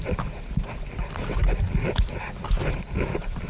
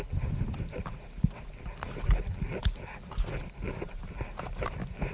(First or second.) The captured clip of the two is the second